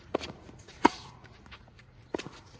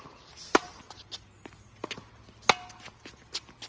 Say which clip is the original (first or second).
second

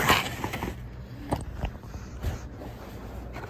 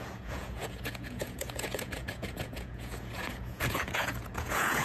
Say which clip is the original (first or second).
first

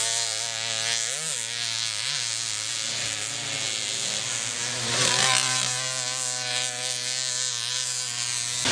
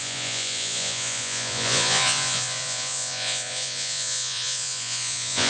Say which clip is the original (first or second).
first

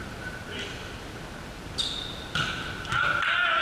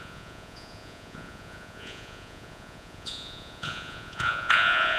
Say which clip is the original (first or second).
first